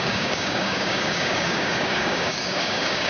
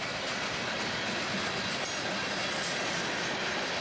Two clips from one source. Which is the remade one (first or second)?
first